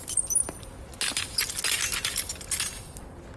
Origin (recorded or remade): recorded